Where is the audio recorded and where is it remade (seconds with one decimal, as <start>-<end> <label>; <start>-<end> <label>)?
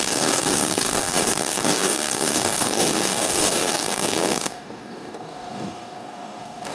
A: 0.0-6.7 remade